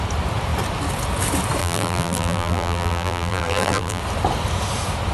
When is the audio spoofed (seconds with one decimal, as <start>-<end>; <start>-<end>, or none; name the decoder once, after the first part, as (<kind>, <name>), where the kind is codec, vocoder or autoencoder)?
1.6-4.0 (vocoder, BigVGAN v2)